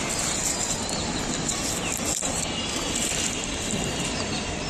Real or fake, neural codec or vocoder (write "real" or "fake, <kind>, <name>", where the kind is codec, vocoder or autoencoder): real